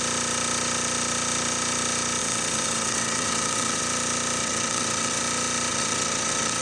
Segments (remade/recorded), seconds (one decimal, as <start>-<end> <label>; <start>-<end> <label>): 0.0-2.2 recorded; 2.2-3.8 remade; 3.8-4.4 recorded; 4.4-5.2 remade; 5.2-5.7 recorded; 5.7-6.6 remade